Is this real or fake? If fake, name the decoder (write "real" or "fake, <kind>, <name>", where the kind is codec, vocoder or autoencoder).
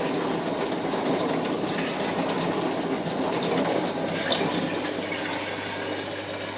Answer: real